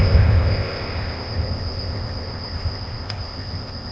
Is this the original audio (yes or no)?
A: no